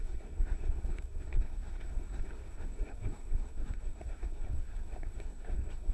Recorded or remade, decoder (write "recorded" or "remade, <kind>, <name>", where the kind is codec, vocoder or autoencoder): remade, codec, SNAC